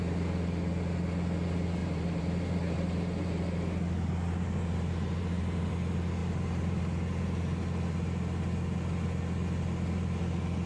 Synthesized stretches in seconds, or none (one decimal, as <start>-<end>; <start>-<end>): 1.8-5.7; 6.2-6.8